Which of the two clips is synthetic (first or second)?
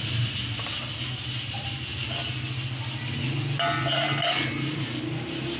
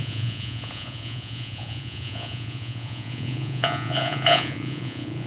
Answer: second